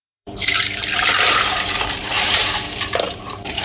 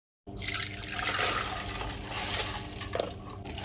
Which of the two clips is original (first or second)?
second